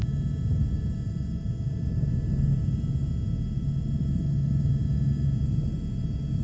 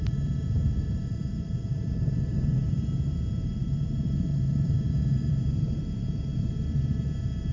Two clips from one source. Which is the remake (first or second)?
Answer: second